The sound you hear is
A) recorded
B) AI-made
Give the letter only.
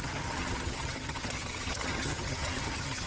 B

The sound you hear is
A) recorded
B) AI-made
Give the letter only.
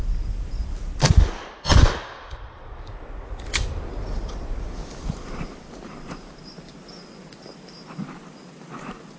B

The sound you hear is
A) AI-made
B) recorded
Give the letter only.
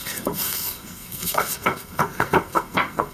A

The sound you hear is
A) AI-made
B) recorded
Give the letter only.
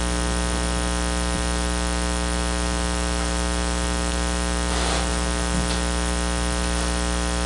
B